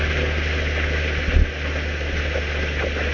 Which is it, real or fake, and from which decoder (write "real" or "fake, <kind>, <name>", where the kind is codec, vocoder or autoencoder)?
real